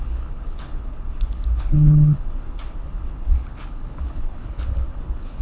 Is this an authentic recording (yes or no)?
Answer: no